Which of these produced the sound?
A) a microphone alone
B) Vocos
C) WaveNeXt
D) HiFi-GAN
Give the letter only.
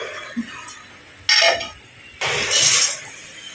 A